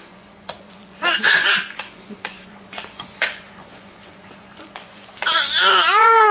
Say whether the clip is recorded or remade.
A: remade